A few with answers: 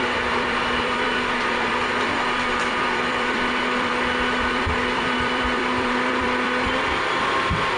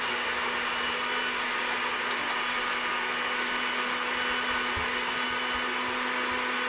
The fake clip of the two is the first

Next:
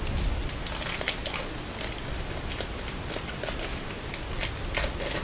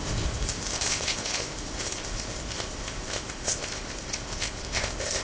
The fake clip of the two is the second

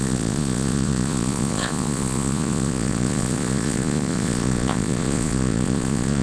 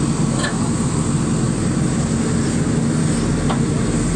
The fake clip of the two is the first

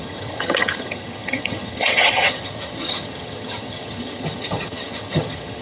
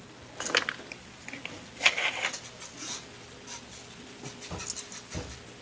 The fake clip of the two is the first